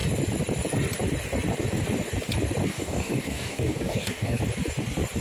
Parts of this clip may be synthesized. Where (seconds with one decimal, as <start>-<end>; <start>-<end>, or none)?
2.7-4.4